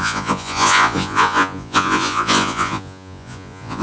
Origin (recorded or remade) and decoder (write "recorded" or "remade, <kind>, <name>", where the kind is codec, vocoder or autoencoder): remade, vocoder, Vocos